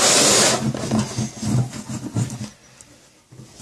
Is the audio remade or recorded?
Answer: recorded